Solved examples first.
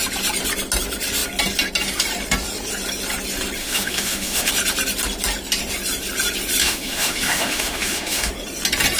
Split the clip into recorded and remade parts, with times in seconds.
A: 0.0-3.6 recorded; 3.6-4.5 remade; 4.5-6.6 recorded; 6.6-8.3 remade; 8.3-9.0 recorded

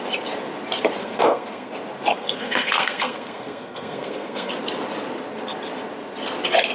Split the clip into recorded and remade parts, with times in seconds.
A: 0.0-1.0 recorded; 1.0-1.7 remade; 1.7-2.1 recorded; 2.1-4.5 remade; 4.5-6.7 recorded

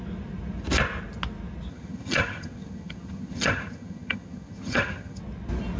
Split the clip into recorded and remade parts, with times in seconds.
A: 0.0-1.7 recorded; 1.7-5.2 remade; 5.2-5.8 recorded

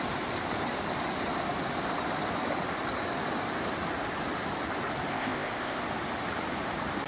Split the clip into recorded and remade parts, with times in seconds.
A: 0.0-5.1 recorded; 5.1-5.8 remade; 5.8-7.1 recorded

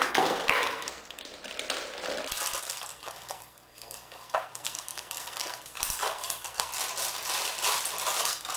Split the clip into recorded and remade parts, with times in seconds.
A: 0.0-1.2 remade; 1.2-2.6 recorded; 2.6-6.7 remade; 6.7-8.2 recorded; 8.2-8.6 remade